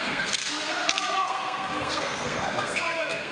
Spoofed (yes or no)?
yes